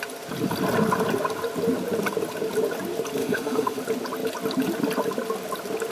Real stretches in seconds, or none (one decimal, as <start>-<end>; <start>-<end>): 0.0-3.2; 3.8-5.9